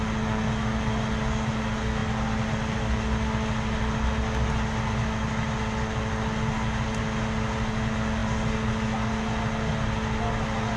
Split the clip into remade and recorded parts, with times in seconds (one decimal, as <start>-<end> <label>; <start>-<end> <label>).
0.0-10.8 recorded